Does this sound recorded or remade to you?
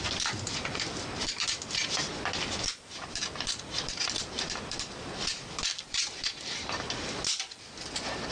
remade